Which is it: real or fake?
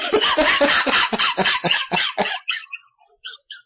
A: fake